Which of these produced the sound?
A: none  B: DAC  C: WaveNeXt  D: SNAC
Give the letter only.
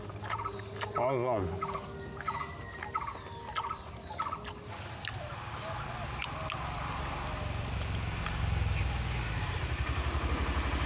A